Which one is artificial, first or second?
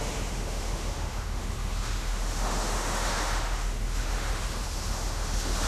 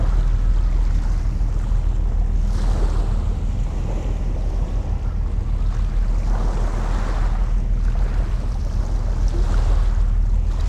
first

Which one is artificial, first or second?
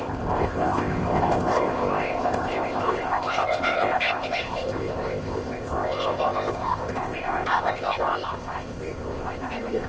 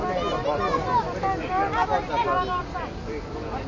first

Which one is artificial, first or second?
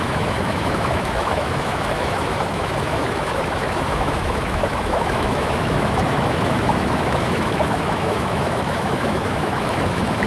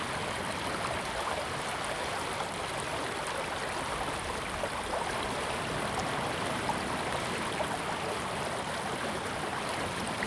first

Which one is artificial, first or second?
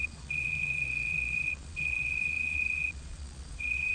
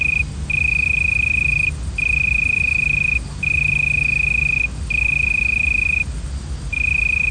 first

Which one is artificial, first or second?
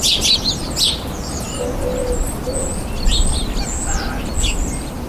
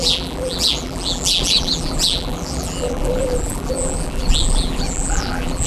second